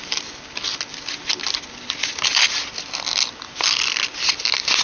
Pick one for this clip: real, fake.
real